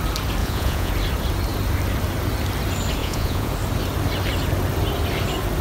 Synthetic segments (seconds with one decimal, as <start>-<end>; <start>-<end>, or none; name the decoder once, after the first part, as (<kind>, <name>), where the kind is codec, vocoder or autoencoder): 0.4-0.9 (vocoder, Vocos); 3.0-3.5